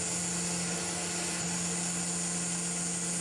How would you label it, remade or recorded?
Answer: recorded